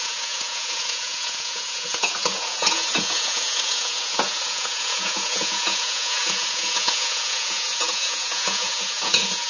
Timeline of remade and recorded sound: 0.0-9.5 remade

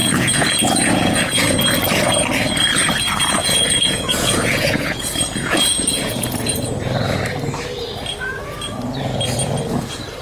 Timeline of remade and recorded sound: 0.0-1.6 remade; 1.6-3.4 recorded; 3.4-6.7 remade; 6.7-10.2 recorded

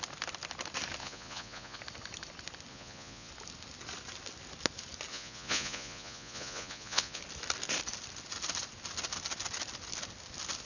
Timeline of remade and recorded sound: 0.0-1.0 recorded; 1.0-1.8 remade; 1.8-2.7 recorded; 2.7-3.3 remade; 3.3-5.1 recorded; 5.1-7.2 remade; 7.2-10.7 recorded

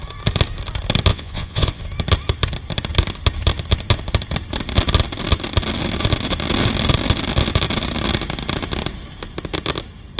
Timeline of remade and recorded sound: 0.0-1.1 recorded; 1.1-1.8 remade; 1.8-10.2 recorded

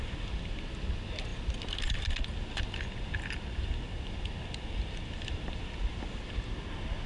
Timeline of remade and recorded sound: 0.0-7.1 recorded

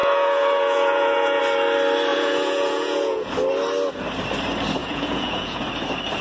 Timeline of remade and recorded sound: 0.0-1.4 remade; 1.4-2.1 recorded; 2.1-3.3 remade; 3.3-4.8 recorded; 4.8-5.6 remade; 5.6-6.2 recorded

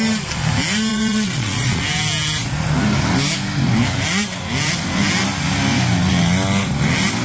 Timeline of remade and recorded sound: 0.0-0.9 recorded; 0.9-1.8 remade; 1.8-7.2 recorded

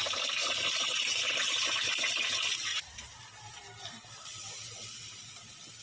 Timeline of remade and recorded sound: 0.0-2.7 recorded; 2.7-3.2 remade; 3.2-5.8 recorded